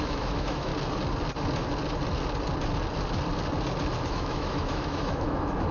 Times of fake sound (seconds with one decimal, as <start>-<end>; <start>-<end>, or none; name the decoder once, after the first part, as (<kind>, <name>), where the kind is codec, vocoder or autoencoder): 0.0-0.7 (autoencoder, DAC-VAE); 4.1-5.7